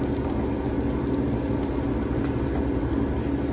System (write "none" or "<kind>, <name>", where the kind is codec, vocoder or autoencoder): none